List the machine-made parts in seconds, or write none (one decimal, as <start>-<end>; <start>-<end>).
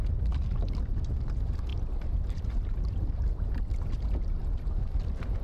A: 1.7-3.9